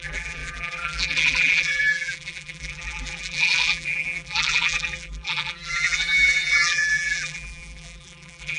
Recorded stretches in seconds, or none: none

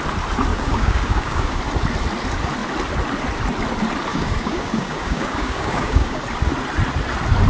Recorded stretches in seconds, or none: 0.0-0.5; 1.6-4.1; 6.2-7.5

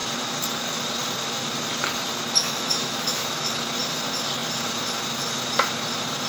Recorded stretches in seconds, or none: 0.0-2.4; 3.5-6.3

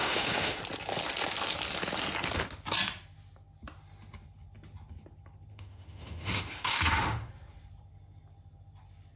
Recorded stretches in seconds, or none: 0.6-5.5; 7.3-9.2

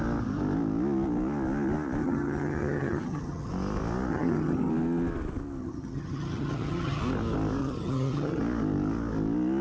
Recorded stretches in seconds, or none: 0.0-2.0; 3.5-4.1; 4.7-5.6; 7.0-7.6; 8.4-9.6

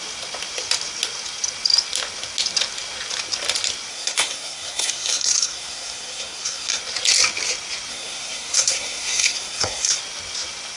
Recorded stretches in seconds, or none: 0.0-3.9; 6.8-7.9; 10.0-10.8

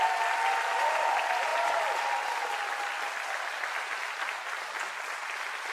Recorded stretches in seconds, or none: 0.0-5.7